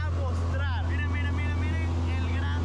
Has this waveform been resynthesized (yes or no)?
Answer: no